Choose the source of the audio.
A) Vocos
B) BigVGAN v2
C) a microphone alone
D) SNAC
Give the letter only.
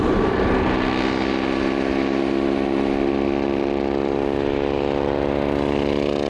C